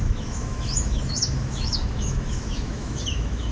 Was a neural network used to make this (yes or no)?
yes